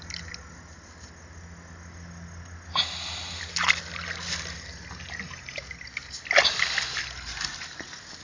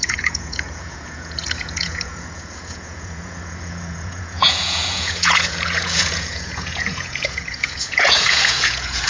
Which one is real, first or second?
first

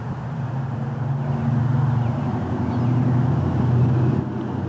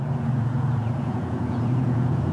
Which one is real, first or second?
first